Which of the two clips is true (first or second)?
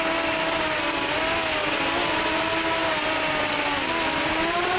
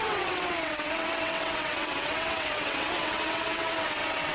first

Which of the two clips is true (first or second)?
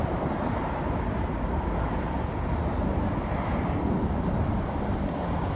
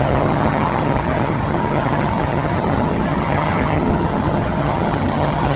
first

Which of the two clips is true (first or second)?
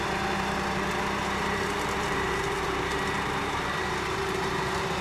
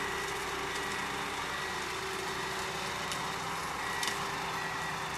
second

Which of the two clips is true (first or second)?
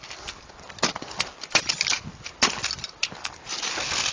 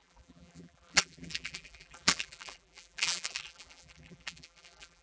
first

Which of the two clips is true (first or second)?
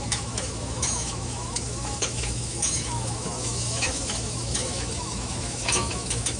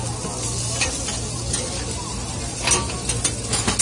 second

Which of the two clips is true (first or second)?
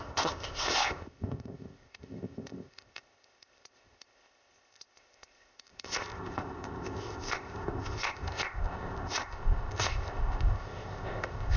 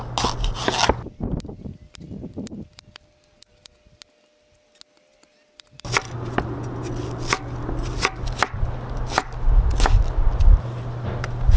second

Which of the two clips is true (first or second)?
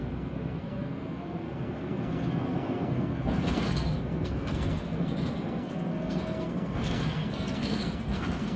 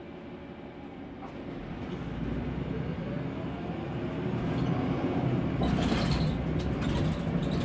second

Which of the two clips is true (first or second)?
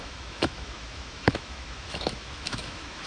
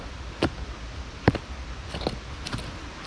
second